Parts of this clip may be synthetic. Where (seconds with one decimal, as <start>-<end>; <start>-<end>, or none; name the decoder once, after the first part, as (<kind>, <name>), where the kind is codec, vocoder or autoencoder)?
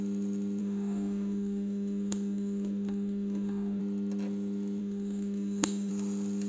0.6-3.8 (autoencoder, DAC-VAE); 4.8-5.9